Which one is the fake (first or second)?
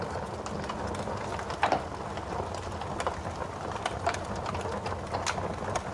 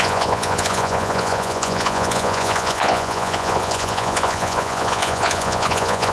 second